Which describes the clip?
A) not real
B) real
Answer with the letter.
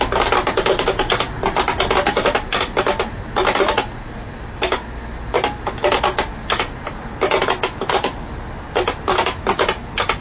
B